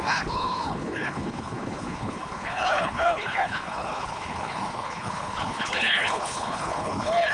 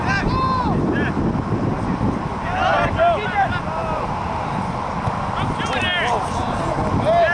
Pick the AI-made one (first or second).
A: first